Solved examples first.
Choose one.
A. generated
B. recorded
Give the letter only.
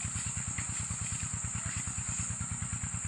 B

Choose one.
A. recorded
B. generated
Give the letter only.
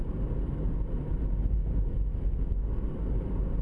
A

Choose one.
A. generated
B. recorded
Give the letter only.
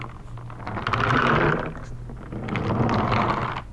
B